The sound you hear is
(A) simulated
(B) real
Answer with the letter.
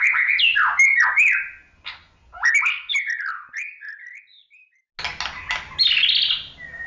B